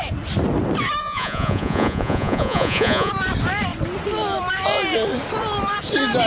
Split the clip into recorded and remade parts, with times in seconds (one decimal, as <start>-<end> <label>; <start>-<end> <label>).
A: 0.0-1.0 recorded; 1.0-3.1 remade; 3.1-6.3 recorded